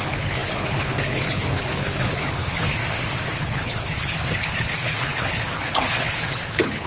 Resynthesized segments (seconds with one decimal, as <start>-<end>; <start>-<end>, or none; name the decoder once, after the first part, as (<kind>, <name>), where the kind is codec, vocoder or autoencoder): 0.0-2.8 (codec, HILCodec); 3.4-6.9